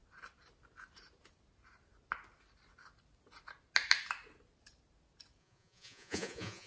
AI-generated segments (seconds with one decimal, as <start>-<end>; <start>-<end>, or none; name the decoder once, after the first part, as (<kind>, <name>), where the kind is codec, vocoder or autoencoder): 5.4-6.7 (vocoder, Vocos)